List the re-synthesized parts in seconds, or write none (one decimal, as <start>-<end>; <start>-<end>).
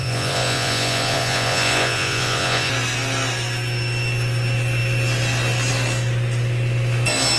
0.0-2.7